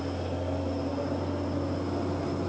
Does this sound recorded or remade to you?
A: recorded